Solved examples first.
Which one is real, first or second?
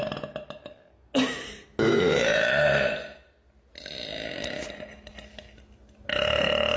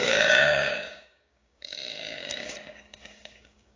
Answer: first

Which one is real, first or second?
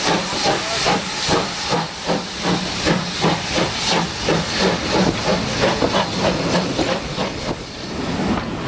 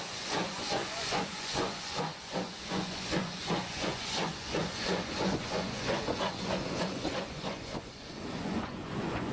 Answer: first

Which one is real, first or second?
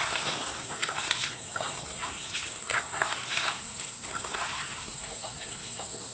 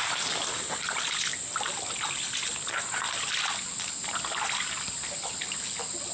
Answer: second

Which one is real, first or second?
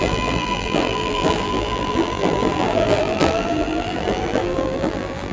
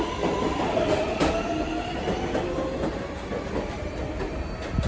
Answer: second